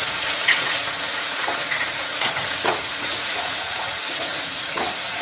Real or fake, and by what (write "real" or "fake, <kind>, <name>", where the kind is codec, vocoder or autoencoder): fake, vocoder, Vocos